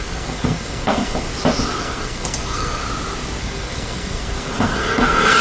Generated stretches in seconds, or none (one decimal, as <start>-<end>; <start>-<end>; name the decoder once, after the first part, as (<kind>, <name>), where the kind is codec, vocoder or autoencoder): 0.0-1.3 (codec, SNAC); 1.8-2.8; 3.4-5.4